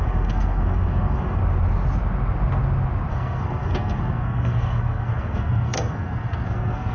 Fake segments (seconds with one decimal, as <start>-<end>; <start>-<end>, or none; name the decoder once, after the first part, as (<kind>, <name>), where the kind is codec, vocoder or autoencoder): 0.0-1.4 (codec, SNAC); 3.1-6.9